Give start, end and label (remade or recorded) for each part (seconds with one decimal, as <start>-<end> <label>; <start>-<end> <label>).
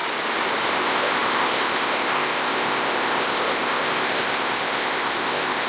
0.0-0.7 recorded; 0.7-5.7 remade